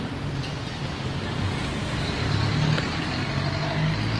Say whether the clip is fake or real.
real